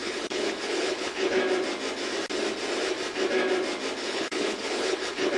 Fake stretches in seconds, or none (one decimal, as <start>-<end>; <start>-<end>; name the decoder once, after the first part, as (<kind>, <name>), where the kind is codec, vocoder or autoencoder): 0.0-1.4 (codec, HILCodec); 4.0-5.4

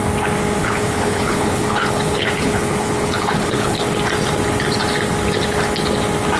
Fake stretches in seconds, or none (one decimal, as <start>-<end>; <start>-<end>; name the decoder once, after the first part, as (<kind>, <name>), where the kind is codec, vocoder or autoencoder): 0.6-3.8 (codec, HILCodec)

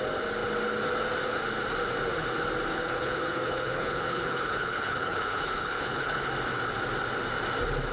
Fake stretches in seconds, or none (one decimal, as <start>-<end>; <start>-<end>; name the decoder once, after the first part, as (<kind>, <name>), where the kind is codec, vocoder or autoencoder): 2.7-6.3 (codec, HILCodec)

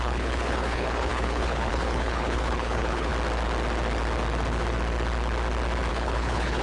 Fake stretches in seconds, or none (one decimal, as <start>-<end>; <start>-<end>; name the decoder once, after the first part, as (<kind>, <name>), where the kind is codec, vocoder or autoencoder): 0.0-3.1 (codec, HILCodec); 5.9-6.6

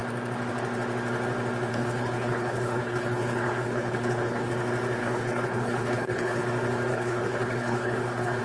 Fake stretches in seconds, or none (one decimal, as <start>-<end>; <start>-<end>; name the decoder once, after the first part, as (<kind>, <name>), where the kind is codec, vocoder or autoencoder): 1.7-4.5 (codec, HILCodec); 5.0-6.4; 6.9-8.4

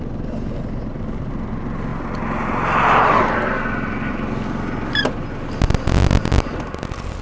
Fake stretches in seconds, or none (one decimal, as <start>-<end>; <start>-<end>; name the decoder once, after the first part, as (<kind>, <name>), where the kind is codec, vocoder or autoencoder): none

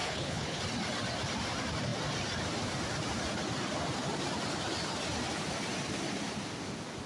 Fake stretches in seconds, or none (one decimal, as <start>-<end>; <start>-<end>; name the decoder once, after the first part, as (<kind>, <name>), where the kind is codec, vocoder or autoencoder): 0.0-0.6 (codec, HILCodec)